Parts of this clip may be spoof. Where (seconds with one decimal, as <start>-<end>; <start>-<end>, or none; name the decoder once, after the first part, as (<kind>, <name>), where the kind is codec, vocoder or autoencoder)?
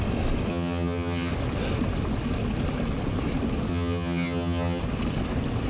0.5-1.3 (vocoder, HiFi-GAN); 3.7-4.8